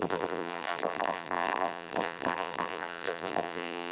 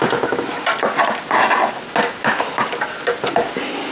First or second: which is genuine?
second